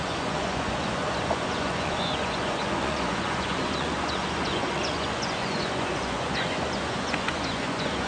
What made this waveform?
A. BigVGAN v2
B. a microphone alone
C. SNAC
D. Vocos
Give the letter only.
D